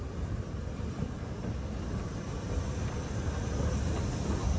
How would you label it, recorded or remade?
recorded